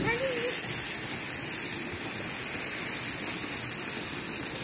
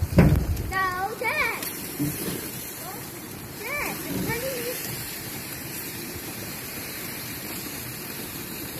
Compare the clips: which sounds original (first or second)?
first